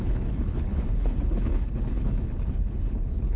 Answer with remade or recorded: remade